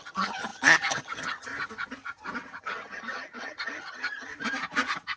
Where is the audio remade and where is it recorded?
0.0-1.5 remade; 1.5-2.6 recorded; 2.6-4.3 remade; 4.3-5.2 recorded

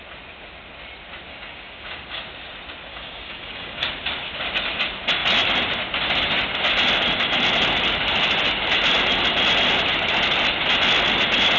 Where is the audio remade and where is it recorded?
0.0-1.3 recorded; 1.3-2.2 remade; 2.2-2.9 recorded; 2.9-3.9 remade; 3.9-11.6 recorded